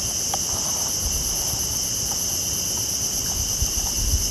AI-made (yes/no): no